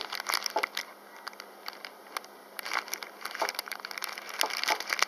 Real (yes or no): yes